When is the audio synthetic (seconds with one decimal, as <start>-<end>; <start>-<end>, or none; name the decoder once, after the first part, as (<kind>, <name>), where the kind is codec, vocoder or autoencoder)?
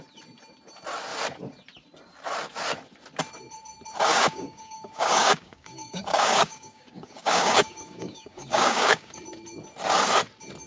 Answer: 4.1-9.2 (codec, DAC)